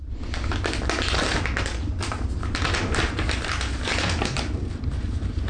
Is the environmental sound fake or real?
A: real